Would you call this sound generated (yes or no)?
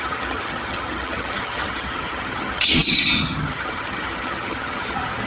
yes